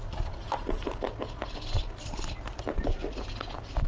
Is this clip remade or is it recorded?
recorded